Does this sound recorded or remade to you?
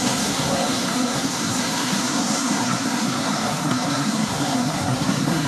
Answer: remade